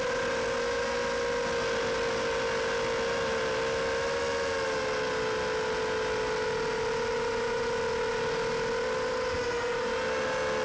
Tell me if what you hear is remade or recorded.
recorded